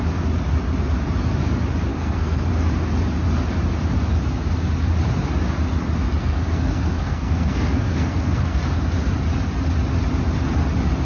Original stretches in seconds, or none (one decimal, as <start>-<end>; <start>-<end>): 0.0-1.9; 2.5-6.2; 8.6-11.1